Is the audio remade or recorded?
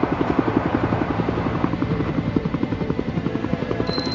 remade